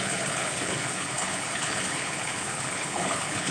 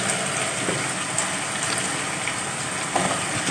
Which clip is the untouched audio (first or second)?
second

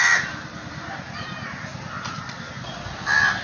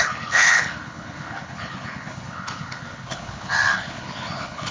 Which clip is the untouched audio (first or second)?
first